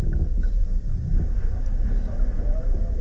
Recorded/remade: recorded